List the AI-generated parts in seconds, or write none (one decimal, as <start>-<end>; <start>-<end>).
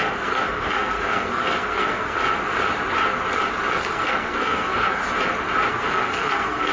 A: 0.0-2.2; 3.7-5.0; 5.7-6.7